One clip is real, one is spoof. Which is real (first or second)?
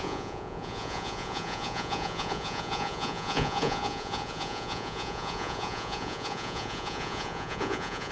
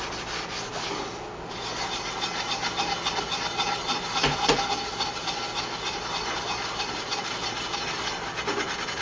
second